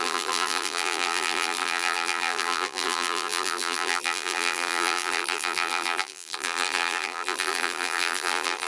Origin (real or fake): fake